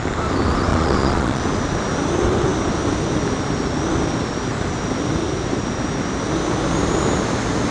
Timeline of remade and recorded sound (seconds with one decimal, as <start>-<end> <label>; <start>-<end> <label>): 0.0-0.7 recorded; 0.7-1.4 remade; 1.4-7.7 recorded